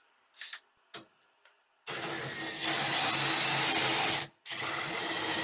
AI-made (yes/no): no